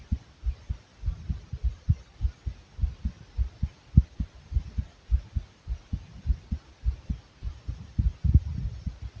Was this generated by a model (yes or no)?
no